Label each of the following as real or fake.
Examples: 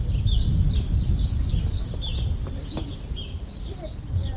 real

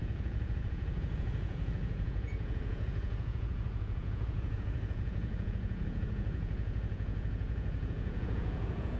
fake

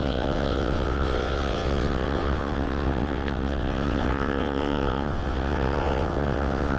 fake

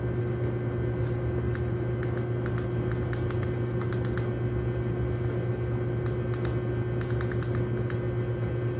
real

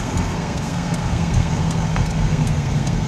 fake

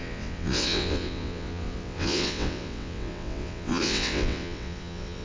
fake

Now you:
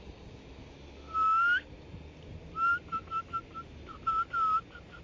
real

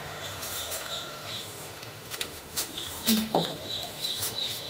fake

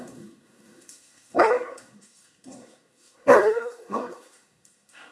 fake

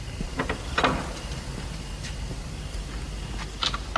real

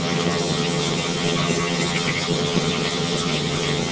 fake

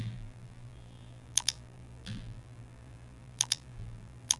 fake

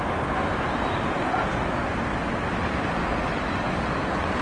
real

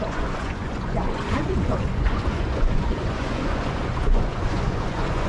fake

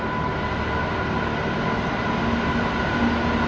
real